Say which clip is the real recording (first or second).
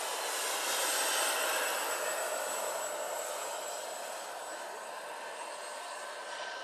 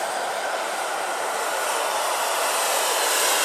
first